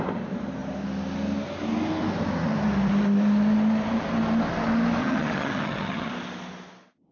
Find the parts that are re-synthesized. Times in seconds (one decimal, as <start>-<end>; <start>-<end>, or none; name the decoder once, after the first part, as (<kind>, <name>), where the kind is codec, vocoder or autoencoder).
5.0-6.1 (vocoder, HiFi-GAN)